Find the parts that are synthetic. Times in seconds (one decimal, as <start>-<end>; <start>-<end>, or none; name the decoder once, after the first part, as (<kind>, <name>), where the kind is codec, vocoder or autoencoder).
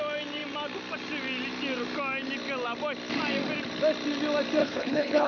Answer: 4.6-5.3 (codec, HILCodec)